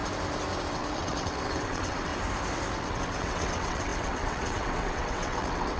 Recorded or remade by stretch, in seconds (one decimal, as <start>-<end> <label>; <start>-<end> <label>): 0.0-0.7 recorded; 0.7-2.1 remade; 2.1-2.8 recorded; 2.8-5.8 remade